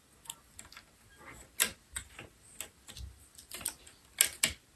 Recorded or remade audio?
recorded